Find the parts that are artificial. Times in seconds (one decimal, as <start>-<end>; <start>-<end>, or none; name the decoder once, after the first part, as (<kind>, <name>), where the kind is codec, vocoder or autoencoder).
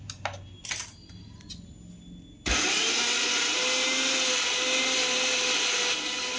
none